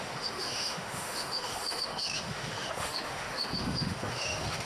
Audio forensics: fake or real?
fake